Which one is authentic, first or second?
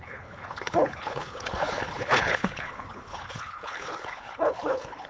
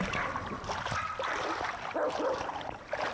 second